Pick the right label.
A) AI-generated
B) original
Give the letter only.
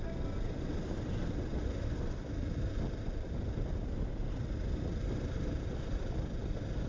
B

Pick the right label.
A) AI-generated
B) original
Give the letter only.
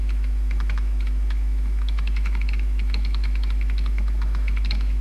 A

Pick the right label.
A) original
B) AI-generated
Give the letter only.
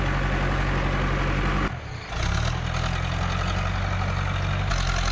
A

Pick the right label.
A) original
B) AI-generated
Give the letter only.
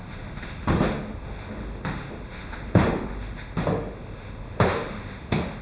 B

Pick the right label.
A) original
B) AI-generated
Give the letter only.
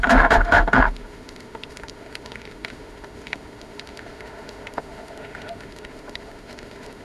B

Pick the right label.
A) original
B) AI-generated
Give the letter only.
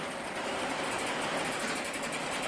A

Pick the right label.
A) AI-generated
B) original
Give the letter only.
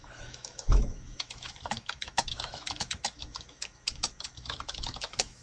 A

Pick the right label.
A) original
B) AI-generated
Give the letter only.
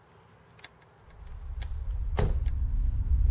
A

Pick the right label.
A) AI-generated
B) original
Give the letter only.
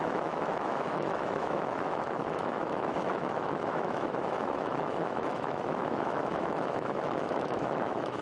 A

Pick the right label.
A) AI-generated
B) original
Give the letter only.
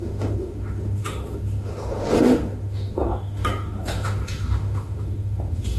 A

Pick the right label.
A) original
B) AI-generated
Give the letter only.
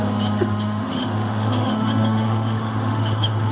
B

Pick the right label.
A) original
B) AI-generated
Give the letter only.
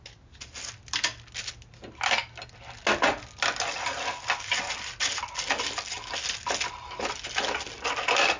A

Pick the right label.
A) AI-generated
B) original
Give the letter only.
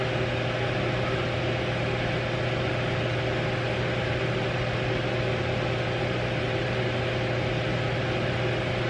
B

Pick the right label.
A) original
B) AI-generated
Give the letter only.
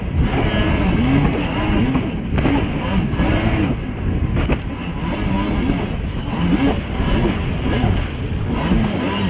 A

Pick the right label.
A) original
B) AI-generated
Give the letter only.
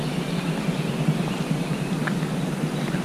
A